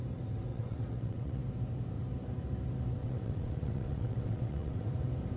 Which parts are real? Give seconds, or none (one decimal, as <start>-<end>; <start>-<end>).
0.0-0.5; 1.4-3.0; 4.9-5.4